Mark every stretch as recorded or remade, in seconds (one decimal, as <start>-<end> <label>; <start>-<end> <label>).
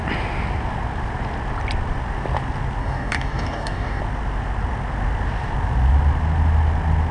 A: 0.0-2.8 recorded; 2.8-4.0 remade; 4.0-7.1 recorded